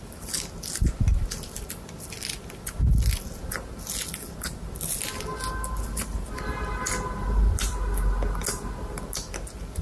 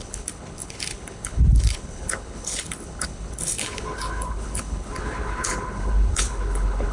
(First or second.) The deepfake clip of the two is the second